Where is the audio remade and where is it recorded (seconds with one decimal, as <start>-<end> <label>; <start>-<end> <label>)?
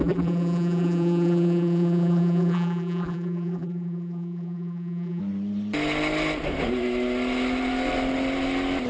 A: 0.0-5.2 remade; 5.2-8.9 recorded